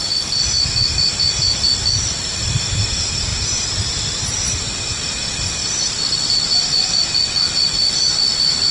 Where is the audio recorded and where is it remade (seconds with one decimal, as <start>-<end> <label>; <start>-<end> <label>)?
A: 0.0-8.7 recorded